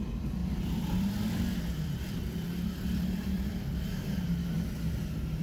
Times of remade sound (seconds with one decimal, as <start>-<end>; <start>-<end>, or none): 0.4-3.5; 4.4-4.9